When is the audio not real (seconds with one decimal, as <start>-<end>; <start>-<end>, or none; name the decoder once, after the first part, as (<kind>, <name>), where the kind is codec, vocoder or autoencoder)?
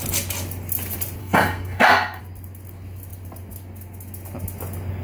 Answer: 1.2-2.2 (codec, SNAC)